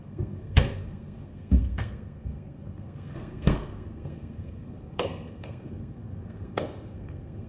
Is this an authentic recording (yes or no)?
no